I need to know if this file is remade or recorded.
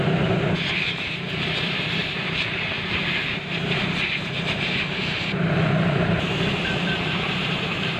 remade